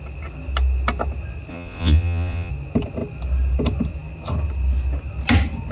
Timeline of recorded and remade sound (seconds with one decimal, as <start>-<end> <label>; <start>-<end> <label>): 0.0-1.5 recorded; 1.5-2.5 remade; 2.5-5.7 recorded